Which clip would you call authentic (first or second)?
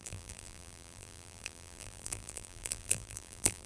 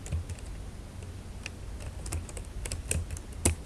second